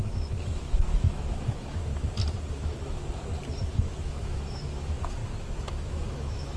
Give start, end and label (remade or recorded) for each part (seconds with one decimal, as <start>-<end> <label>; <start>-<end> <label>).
0.0-1.9 remade; 1.9-2.5 recorded; 2.5-3.0 remade; 3.0-3.7 recorded; 3.7-5.2 remade; 5.2-5.7 recorded; 5.7-6.6 remade